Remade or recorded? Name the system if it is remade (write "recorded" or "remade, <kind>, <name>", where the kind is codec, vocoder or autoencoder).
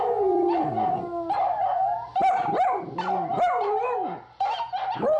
recorded